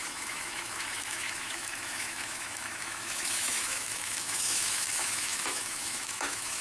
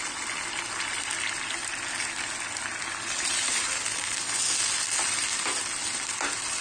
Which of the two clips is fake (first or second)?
first